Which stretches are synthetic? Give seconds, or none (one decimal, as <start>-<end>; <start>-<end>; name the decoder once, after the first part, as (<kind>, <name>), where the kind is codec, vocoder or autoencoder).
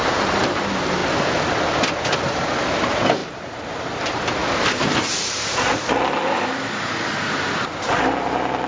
0.0-0.6 (vocoder, BigVGAN v2); 3.2-3.7; 4.4-6.6